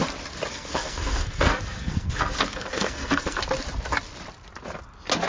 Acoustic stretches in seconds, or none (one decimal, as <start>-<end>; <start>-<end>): 0.0-0.5; 3.4-5.3